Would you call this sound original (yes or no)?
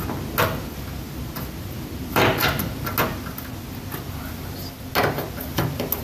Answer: yes